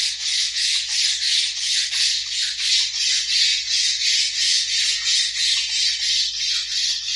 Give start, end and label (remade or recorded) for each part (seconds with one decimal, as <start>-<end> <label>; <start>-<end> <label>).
0.0-0.9 remade; 0.9-1.3 recorded; 1.3-2.4 remade; 2.4-3.5 recorded; 3.5-5.9 remade; 5.9-7.2 recorded